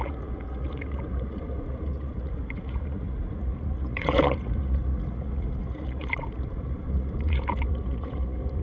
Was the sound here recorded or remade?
remade